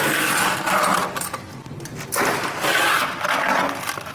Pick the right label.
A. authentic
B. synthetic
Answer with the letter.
A